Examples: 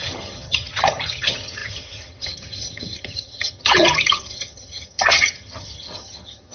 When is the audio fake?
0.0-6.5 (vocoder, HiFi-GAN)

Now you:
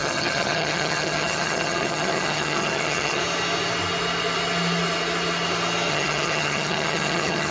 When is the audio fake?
0.0-3.2 (vocoder, HiFi-GAN); 5.9-7.5

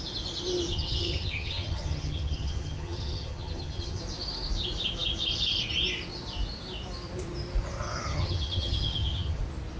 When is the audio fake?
0.7-4.0 (vocoder, HiFi-GAN); 8.1-9.4